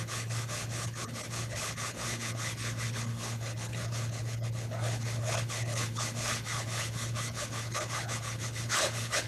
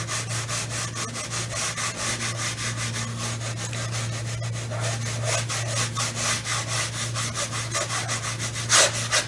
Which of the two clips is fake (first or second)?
first